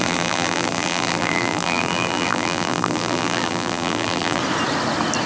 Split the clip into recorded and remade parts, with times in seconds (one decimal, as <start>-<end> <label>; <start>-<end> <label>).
0.0-4.4 remade; 4.4-5.3 recorded